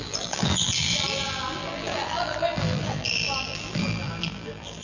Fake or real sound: fake